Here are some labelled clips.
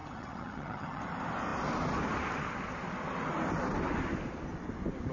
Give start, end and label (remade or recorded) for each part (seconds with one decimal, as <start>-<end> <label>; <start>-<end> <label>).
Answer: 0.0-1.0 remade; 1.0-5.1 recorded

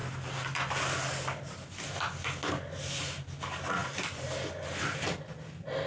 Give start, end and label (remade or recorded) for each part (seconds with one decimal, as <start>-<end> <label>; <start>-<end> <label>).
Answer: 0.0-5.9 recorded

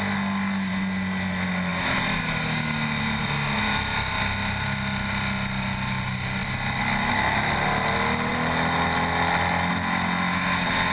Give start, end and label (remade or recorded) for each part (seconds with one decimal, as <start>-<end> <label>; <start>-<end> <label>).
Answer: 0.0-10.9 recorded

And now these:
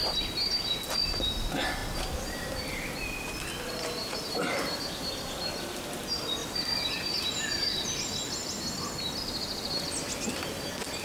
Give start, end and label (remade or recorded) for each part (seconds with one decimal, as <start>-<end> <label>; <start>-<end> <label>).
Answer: 0.0-6.4 recorded; 6.4-6.9 remade; 6.9-11.0 recorded